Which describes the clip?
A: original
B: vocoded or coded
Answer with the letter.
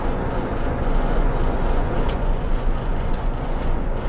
B